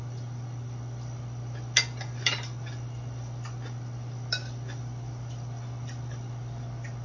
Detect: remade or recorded recorded